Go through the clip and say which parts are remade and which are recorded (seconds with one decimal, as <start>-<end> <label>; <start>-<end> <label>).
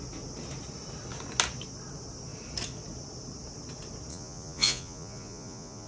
0.0-4.1 recorded; 4.1-5.9 remade